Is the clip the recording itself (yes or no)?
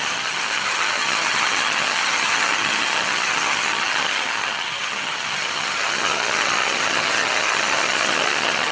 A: no